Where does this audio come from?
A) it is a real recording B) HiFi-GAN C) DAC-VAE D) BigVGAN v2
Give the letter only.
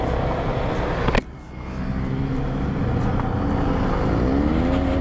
A